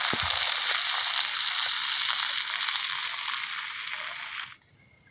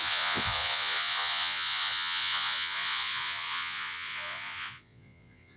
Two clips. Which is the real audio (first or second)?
first